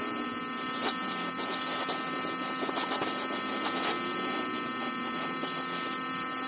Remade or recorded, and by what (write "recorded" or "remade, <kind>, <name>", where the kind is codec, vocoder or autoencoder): recorded